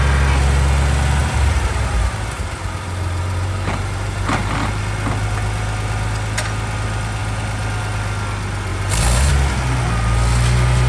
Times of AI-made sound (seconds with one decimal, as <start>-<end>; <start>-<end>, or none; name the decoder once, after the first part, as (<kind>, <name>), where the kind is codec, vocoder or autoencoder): 1.2-4.8 (vocoder, BigVGAN v2); 8.7-9.3